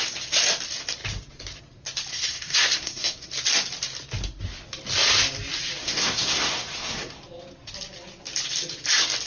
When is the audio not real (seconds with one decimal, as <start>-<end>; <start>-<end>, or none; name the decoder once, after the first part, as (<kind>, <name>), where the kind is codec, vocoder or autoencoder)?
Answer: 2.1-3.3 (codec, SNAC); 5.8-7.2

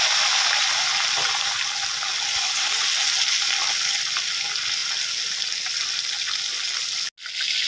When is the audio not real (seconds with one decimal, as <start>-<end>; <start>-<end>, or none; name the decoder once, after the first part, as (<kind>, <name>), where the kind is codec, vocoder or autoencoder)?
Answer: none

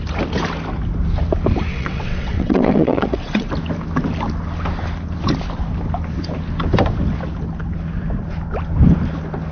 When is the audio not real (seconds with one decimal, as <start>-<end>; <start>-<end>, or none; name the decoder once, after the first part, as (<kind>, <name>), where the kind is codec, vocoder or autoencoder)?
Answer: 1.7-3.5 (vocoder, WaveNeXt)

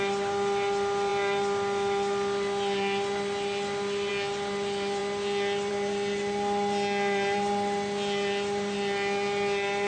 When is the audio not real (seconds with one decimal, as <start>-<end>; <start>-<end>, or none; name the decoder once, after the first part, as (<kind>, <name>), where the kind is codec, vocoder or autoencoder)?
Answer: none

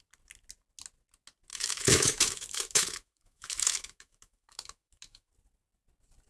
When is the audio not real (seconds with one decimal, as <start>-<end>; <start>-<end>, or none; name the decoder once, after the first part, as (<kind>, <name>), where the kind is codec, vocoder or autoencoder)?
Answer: 1.5-5.3 (autoencoder, DAC-VAE)

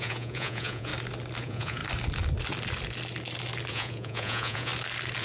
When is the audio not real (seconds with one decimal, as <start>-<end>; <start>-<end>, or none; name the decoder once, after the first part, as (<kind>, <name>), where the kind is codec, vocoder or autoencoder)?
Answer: 0.0-0.9 (vocoder, Vocos); 1.4-1.8; 3.7-4.7

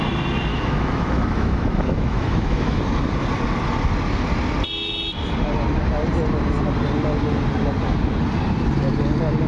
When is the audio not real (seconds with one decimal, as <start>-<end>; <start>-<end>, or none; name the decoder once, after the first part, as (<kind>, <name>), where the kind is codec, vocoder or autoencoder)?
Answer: 0.5-2.8 (autoencoder, DAC-VAE)